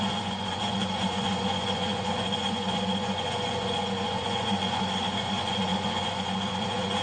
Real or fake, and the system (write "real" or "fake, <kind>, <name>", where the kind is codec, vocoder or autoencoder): fake, vocoder, Vocos